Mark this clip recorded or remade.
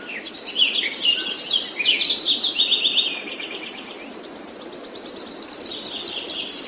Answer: recorded